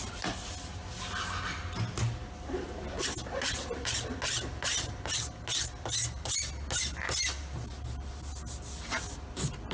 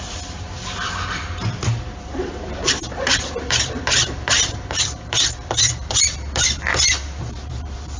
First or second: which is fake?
second